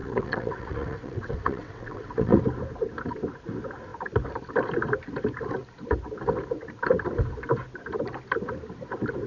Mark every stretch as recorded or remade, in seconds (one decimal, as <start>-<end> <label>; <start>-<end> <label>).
0.0-2.4 remade; 2.4-9.3 recorded